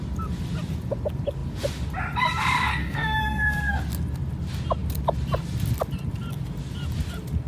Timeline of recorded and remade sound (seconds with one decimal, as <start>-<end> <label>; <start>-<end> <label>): 0.0-2.8 recorded; 2.8-3.8 remade; 3.8-7.5 recorded